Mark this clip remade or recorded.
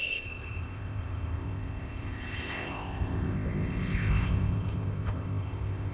remade